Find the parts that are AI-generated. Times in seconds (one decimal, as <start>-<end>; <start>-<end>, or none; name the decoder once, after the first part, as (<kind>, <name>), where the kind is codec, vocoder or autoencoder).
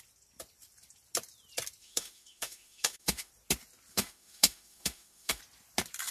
1.8-3.3 (autoencoder, DAC-VAE); 3.9-5.4